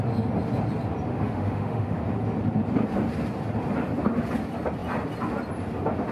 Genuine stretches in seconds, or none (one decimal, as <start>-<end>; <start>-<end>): 0.0-1.1; 2.0-6.1